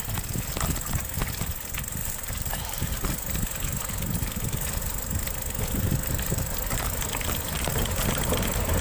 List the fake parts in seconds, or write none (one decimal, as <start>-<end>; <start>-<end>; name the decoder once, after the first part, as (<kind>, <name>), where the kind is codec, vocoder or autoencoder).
2.0-2.9 (vocoder, BigVGAN v2)